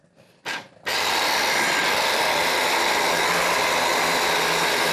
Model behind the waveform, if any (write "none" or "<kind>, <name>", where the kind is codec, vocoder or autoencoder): none